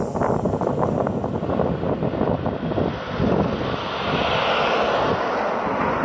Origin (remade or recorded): recorded